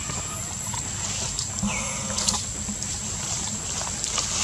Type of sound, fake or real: real